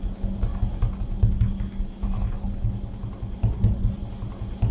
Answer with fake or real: real